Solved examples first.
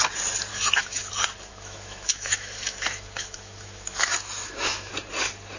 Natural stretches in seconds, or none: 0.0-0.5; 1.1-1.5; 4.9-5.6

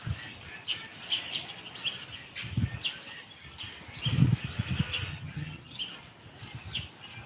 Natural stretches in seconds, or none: 0.0-5.1; 5.8-7.3

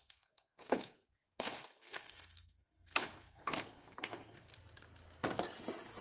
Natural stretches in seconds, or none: 4.5-6.0

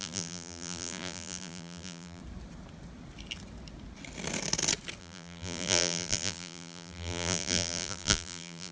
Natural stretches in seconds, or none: 2.2-5.0

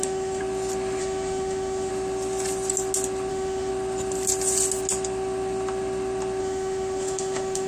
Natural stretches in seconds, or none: 0.4-1.0; 1.9-3.3; 3.7-6.4